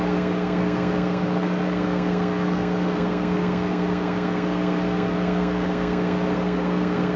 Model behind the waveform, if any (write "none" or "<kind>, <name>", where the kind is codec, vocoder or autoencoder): codec, SNAC